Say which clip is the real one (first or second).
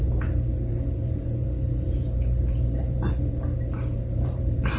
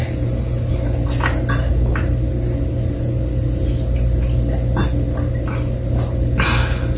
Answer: second